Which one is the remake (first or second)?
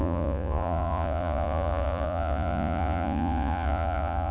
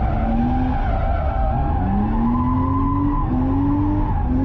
first